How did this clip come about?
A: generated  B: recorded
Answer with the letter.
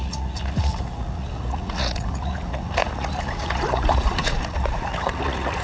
A